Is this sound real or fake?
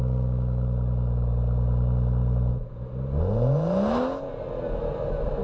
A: real